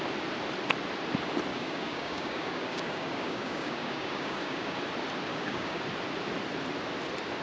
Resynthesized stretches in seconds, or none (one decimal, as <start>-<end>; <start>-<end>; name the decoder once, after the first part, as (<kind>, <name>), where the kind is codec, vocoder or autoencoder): 1.5-4.8 (codec, DAC); 5.3-5.8